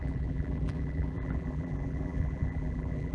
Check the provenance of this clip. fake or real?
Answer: fake